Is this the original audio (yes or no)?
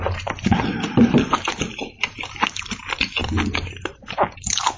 no